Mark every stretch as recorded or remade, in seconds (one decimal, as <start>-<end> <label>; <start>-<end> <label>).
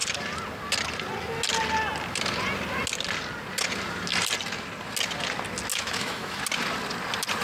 0.0-5.7 recorded; 5.7-6.4 remade; 6.4-7.4 recorded